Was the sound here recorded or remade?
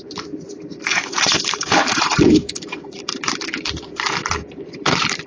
remade